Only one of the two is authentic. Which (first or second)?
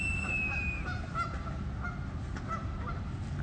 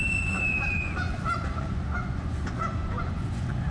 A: first